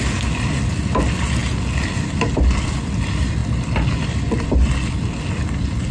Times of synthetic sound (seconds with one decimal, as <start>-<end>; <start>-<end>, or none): none